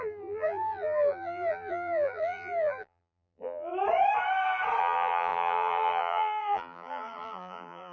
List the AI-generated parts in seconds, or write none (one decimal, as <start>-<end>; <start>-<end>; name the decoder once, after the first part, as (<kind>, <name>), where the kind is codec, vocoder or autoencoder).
0.0-3.7 (vocoder, BigVGAN v2); 4.8-7.9